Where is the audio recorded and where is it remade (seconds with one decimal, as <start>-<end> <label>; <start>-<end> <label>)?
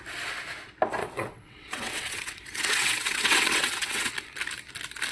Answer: 0.0-1.0 recorded; 1.0-4.1 remade; 4.1-5.1 recorded